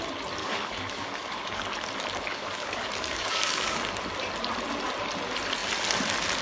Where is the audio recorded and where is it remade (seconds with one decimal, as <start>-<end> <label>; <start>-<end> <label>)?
0.0-0.4 recorded; 0.4-1.6 remade; 1.6-2.3 recorded; 2.3-3.8 remade; 3.8-6.4 recorded